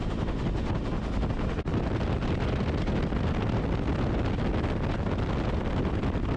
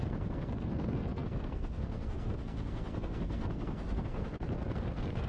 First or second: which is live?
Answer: first